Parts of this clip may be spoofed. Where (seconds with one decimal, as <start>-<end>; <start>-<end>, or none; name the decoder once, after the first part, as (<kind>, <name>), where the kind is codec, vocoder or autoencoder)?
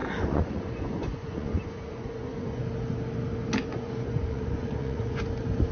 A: 0.0-2.6 (vocoder, Vocos); 3.6-5.2